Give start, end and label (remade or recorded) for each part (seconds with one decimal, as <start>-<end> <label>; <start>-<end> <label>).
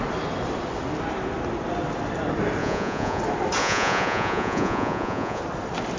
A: 0.0-2.6 recorded; 2.6-3.2 remade; 3.2-3.6 recorded; 3.6-5.4 remade; 5.4-6.0 recorded